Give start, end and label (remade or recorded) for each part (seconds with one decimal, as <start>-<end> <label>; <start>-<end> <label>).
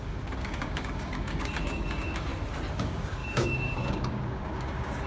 0.0-2.3 remade; 2.3-2.8 recorded; 2.8-5.1 remade